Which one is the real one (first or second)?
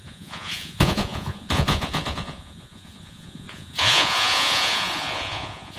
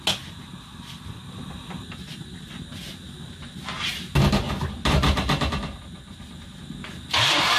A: second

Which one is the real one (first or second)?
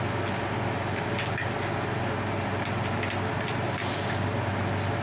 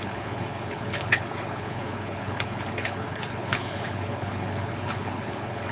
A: first